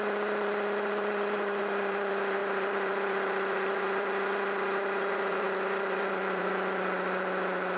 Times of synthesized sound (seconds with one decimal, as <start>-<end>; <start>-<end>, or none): 0.0-7.8

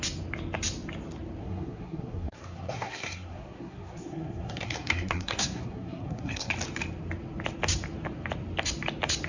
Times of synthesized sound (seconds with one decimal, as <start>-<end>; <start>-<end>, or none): 1.4-6.5

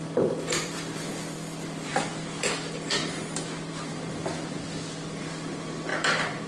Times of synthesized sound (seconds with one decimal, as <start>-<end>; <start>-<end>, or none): 0.0-3.0; 5.2-5.9

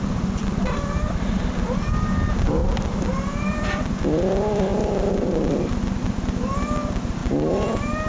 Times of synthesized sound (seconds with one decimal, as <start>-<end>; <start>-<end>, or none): 0.4-1.4; 2.6-3.9

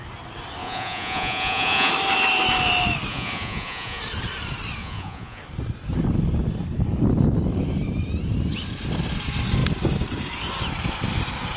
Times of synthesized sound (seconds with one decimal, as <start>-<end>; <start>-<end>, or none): 0.6-1.9; 3.1-4.0; 4.8-5.4

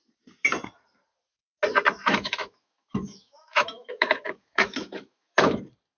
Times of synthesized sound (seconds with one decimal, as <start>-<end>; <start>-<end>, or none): 2.0-5.6

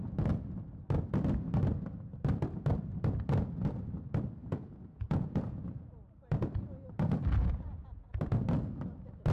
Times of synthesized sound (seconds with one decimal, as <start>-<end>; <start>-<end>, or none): 4.4-5.8; 7.4-8.2